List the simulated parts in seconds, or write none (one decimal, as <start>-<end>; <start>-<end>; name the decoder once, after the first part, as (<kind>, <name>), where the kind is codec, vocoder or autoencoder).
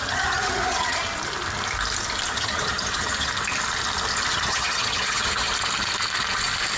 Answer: 0.0-1.0 (vocoder, HiFi-GAN); 2.3-3.3; 4.3-5.5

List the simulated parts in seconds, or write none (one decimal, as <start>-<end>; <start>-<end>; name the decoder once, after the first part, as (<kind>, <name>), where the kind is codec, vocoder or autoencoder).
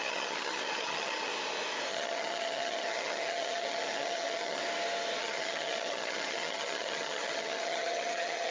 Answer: 0.0-1.3 (vocoder, HiFi-GAN); 1.9-4.6; 5.2-8.5